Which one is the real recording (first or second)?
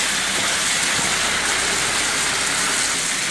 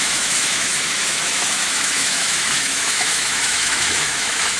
first